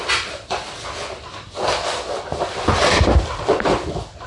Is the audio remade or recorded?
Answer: recorded